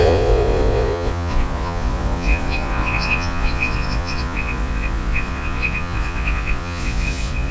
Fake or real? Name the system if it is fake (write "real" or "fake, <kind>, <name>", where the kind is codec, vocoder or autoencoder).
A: fake, vocoder, Vocos